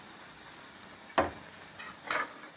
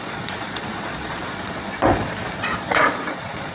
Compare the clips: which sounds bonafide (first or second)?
first